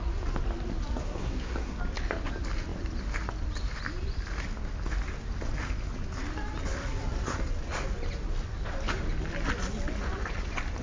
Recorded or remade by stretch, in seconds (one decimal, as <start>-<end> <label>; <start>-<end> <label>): 0.0-1.0 recorded; 1.0-1.8 remade; 1.8-10.8 recorded